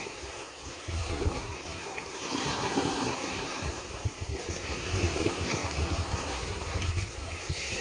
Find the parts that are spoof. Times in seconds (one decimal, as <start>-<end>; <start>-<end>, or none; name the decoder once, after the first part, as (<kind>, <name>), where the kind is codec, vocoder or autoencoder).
0.0-7.8 (codec, SNAC)